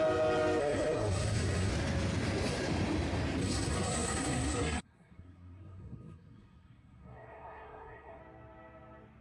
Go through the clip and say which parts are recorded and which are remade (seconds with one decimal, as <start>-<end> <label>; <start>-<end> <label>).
0.0-0.6 recorded; 0.6-1.7 remade; 1.7-3.4 recorded; 3.4-8.2 remade; 8.2-9.2 recorded